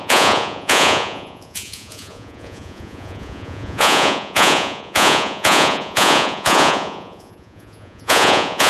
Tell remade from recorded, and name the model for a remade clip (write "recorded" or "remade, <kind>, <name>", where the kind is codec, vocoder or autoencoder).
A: remade, vocoder, Vocos